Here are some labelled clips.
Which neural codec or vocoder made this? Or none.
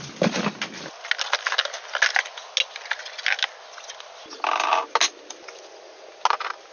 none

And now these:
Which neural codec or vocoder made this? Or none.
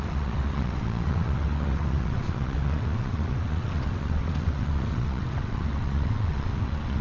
vocoder, WaveNeXt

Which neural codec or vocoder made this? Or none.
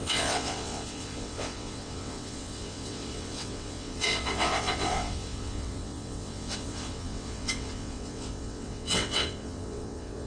vocoder, WaveNeXt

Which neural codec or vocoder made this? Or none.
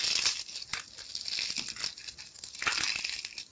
none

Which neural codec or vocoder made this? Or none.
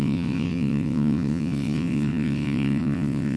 vocoder, WaveNeXt